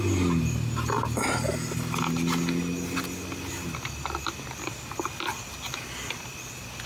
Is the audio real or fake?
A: real